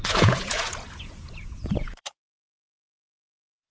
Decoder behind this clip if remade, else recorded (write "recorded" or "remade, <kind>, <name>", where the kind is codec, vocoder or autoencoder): remade, vocoder, Vocos